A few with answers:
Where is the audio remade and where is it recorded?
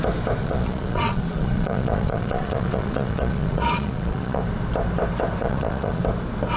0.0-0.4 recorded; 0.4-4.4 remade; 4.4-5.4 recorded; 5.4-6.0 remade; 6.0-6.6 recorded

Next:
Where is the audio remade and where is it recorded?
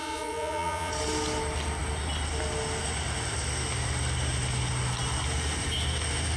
0.0-0.9 remade; 0.9-6.4 recorded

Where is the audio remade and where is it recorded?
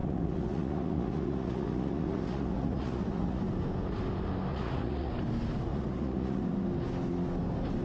0.0-3.4 remade; 3.4-4.5 recorded; 4.5-5.1 remade; 5.1-5.7 recorded; 5.7-6.4 remade; 6.4-7.8 recorded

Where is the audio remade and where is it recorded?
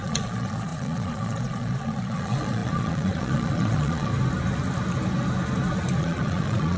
0.0-4.1 remade; 4.1-6.0 recorded; 6.0-6.8 remade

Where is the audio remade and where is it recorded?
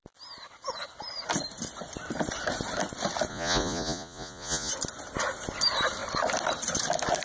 0.0-3.3 recorded; 3.3-4.7 remade; 4.7-7.2 recorded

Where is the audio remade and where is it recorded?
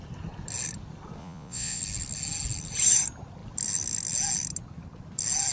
0.0-1.2 recorded; 1.2-1.8 remade; 1.8-5.5 recorded